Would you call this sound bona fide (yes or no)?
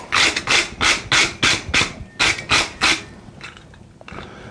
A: yes